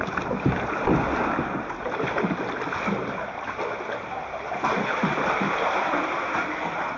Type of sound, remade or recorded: recorded